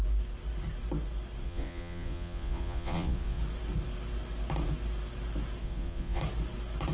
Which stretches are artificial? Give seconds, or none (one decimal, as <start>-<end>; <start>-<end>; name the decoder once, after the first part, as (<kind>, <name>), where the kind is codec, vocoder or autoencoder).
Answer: 1.4-3.4 (vocoder, Vocos); 5.6-6.2